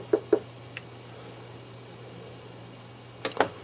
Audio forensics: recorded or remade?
recorded